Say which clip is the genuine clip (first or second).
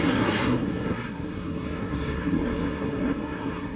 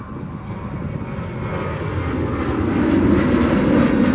second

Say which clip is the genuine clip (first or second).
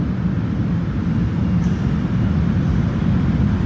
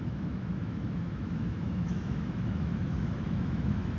first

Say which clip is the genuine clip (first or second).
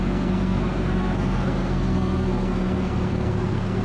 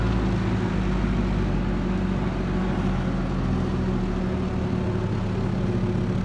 second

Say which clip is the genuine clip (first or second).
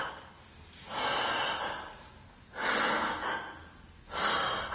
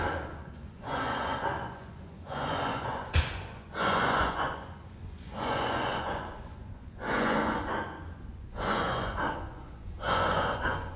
first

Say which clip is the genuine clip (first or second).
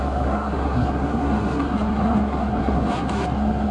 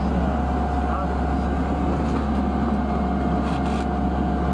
second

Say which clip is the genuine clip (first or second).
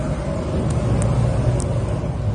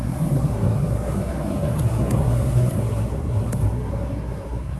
first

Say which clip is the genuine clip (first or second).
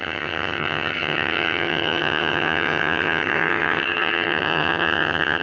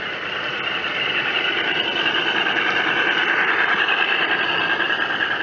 second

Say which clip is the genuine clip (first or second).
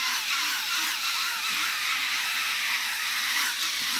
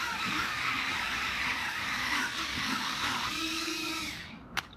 first